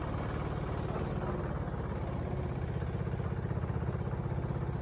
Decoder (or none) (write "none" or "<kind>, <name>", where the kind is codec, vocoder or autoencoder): none